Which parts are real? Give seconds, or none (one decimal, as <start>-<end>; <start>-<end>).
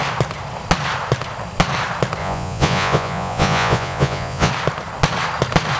0.0-2.2; 4.5-5.8